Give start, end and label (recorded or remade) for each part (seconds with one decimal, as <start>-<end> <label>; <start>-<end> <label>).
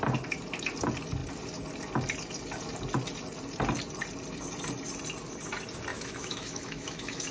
0.0-5.9 recorded; 5.9-7.3 remade